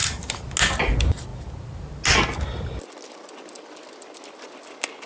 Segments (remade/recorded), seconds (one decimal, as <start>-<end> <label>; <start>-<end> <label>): 0.0-5.1 recorded